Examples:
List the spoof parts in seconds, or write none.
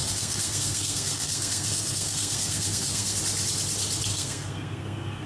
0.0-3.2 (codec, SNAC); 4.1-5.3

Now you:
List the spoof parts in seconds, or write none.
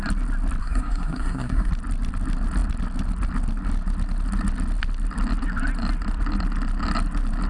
0.6-1.7 (codec, SNAC)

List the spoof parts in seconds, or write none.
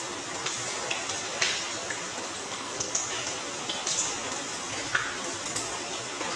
2.4-2.9 (codec, SNAC)